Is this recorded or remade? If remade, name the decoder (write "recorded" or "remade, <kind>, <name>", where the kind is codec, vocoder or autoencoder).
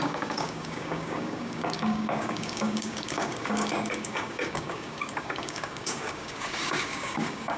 remade, codec, DAC